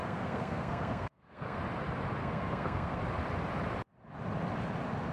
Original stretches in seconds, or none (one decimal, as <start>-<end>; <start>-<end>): 1.6-2.2; 3.0-5.1

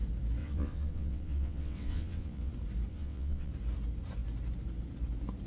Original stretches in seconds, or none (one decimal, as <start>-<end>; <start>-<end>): 0.0-0.4; 2.5-2.9; 3.5-5.5

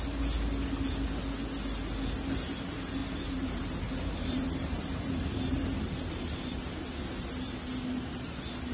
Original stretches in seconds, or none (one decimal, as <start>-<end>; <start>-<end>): 0.0-3.0; 6.7-8.7

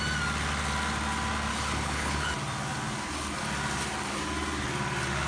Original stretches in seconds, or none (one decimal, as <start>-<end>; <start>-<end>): 0.0-1.5; 2.3-5.3

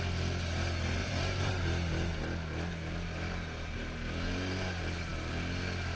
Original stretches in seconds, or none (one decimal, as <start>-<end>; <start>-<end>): 0.0-1.0; 1.5-6.0

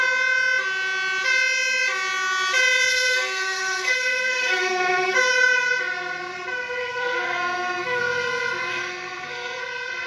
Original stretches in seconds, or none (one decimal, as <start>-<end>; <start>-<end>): 0.0-2.9; 5.1-6.8; 8.0-8.7; 9.6-10.1

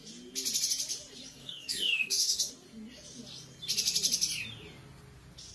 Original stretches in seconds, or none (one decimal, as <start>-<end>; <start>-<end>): 0.0-1.4; 2.5-5.5